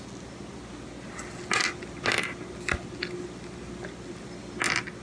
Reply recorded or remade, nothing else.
recorded